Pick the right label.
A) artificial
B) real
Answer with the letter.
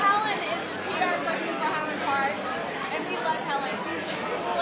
B